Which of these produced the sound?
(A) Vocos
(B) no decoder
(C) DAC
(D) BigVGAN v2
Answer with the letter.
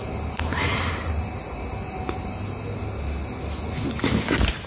B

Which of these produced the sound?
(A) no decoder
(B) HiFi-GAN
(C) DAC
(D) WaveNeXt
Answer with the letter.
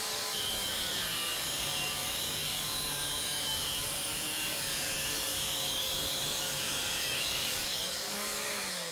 C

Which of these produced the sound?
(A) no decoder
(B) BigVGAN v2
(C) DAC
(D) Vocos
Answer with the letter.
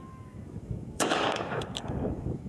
C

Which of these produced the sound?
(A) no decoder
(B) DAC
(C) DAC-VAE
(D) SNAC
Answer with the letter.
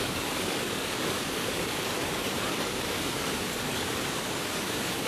B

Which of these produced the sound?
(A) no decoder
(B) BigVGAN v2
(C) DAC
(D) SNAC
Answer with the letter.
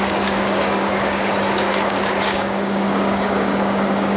C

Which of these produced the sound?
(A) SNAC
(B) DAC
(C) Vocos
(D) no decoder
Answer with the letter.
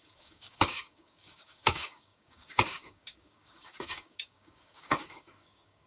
B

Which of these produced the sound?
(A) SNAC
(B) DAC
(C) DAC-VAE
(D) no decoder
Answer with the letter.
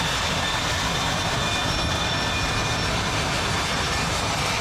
D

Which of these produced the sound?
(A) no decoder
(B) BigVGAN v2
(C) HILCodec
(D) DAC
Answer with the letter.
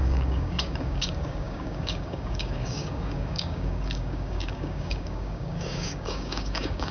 D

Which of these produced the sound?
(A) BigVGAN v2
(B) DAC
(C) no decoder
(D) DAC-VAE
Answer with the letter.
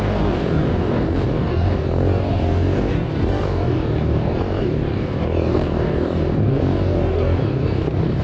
B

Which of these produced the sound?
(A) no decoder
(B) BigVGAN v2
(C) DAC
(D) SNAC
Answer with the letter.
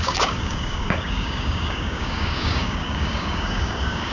C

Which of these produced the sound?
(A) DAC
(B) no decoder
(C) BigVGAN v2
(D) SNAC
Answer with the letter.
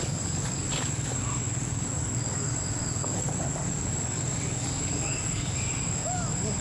A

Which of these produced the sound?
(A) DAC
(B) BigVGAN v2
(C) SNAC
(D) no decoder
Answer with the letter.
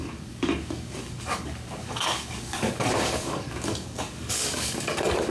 A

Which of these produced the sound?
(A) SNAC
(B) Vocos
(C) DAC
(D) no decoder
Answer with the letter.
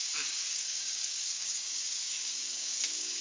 C